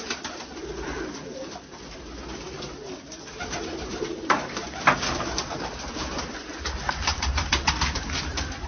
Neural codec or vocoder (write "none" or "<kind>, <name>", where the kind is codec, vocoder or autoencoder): none